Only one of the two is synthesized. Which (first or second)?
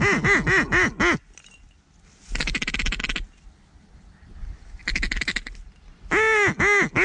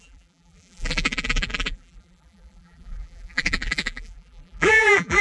second